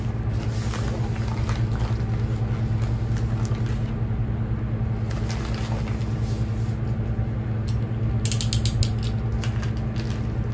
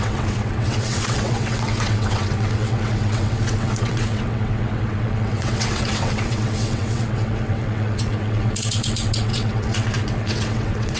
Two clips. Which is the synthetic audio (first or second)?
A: second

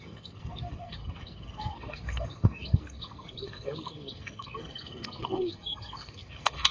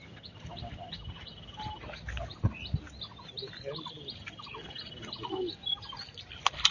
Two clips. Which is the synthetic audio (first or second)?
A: first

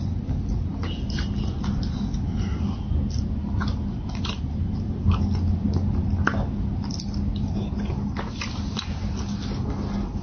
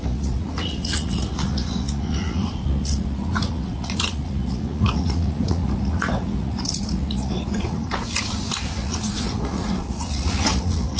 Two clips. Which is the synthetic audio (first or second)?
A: second